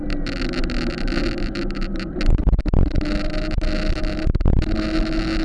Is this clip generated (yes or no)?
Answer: no